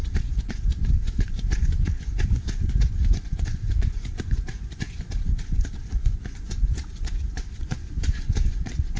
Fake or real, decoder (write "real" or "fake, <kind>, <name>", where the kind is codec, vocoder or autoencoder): fake, vocoder, Vocos